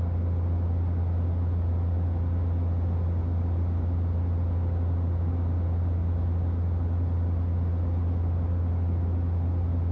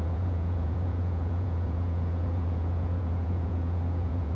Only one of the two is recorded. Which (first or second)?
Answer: first